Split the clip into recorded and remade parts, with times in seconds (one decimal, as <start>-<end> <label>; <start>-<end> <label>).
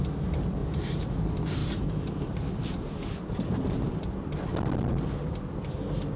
0.0-0.6 recorded; 0.6-1.2 remade; 1.2-1.6 recorded; 1.6-3.9 remade; 3.9-6.2 recorded